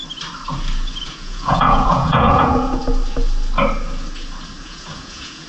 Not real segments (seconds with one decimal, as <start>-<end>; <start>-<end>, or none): 1.0-2.8; 4.6-5.5

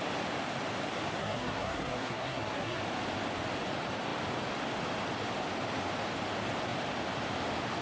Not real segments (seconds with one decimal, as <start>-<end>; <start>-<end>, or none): 1.2-2.8

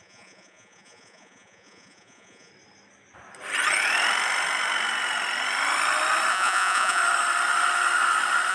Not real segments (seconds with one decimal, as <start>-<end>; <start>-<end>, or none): 0.0-2.5; 6.3-7.0

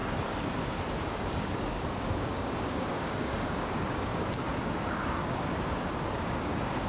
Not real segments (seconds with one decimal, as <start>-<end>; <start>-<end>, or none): 1.0-6.9

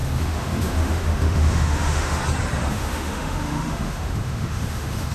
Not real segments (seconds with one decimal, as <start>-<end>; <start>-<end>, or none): 0.0-2.2; 2.7-5.1

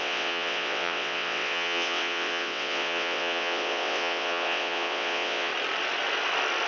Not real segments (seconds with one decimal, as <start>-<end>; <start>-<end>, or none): 0.0-5.5

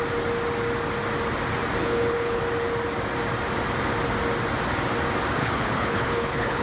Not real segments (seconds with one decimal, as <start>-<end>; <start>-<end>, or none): 1.8-2.4; 5.4-6.6

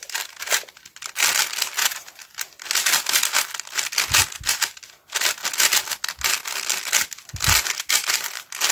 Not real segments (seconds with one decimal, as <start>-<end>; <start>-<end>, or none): none